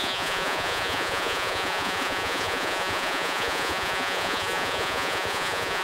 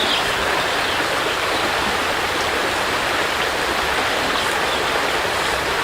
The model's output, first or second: first